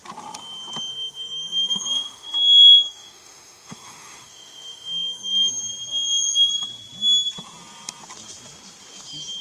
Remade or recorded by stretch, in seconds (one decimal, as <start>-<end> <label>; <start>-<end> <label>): 0.0-0.9 recorded; 0.9-5.5 remade; 5.5-5.9 recorded; 5.9-6.5 remade; 6.5-9.4 recorded